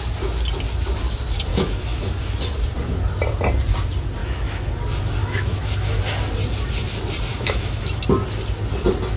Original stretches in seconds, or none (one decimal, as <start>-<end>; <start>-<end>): 0.0-1.5; 2.1-4.2; 4.7-5.2; 6.0-7.3; 8.0-9.2